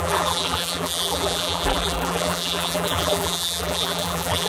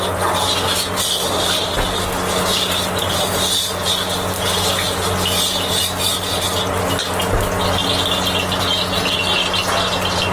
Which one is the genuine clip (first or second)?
second